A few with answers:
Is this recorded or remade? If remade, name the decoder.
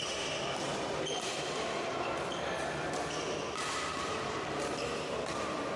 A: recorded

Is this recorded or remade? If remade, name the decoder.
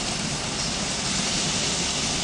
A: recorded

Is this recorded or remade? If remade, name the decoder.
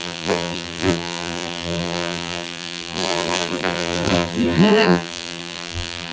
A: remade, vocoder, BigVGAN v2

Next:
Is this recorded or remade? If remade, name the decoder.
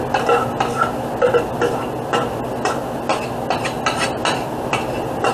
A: recorded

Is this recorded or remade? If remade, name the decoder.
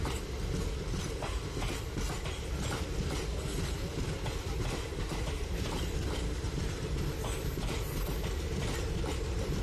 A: recorded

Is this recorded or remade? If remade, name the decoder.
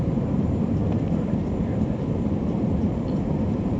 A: remade, vocoder, BigVGAN v2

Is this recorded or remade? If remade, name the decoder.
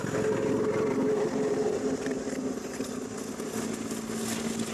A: recorded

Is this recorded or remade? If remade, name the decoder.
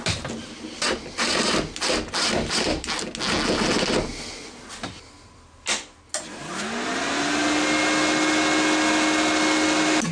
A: recorded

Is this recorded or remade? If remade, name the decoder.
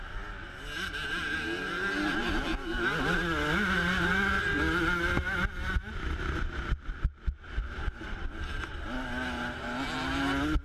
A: recorded